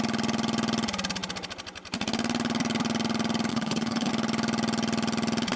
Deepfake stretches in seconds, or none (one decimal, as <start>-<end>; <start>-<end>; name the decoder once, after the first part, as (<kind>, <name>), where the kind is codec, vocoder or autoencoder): 3.5-4.1 (codec, HILCodec)